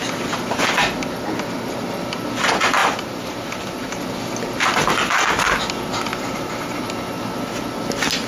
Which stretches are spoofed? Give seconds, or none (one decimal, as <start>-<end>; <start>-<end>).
2.8-4.0; 4.7-5.2; 6.1-6.8